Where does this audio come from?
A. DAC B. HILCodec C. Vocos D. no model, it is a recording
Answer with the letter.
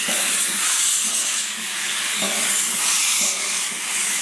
A